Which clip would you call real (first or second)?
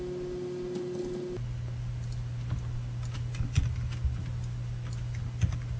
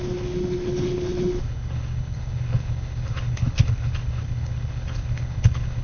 first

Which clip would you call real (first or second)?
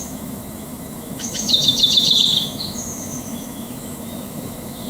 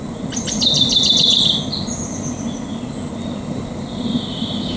second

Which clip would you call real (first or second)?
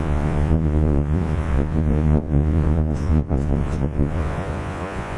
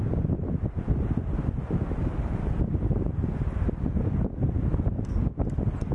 second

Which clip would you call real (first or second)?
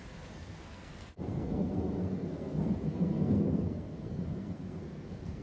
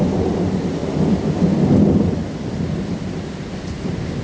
second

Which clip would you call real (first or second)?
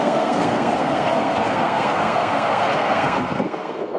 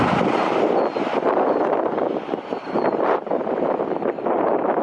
second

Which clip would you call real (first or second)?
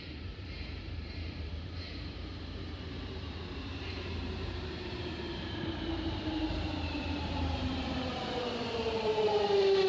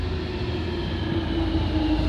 second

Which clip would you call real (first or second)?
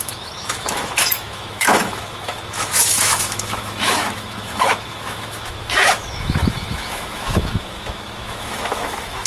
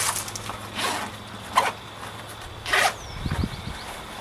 second